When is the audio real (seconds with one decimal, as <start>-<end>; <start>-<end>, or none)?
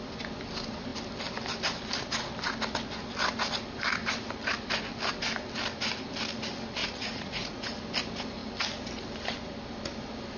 0.0-6.8; 7.7-10.4